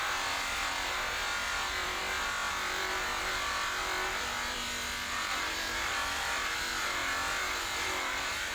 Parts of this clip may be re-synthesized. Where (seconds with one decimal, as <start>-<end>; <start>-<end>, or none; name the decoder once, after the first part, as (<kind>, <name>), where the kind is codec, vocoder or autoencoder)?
0.0-2.0 (vocoder, BigVGAN v2); 2.5-7.0; 7.5-8.5